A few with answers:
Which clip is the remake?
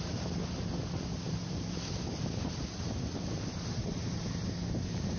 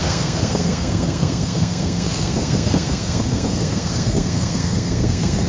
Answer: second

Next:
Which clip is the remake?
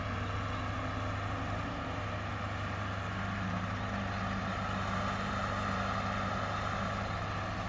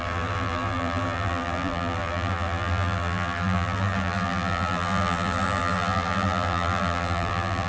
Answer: second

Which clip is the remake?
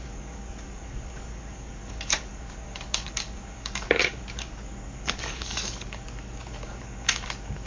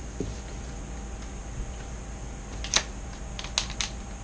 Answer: first